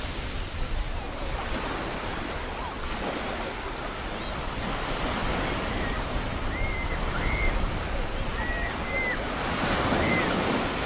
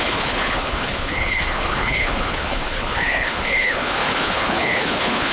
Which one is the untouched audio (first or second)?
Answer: first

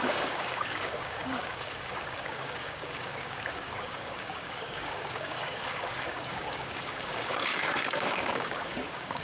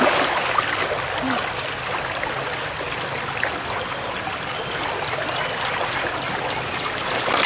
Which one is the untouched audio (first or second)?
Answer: second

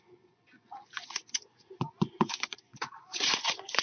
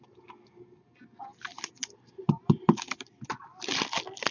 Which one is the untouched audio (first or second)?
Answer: second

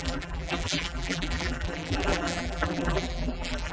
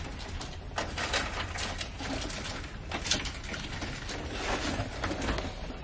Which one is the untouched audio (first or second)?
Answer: second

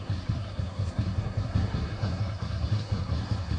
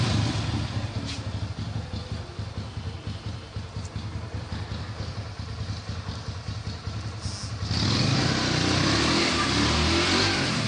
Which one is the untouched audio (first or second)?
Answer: second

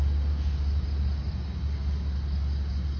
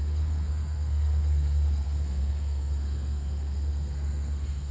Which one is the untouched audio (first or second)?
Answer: first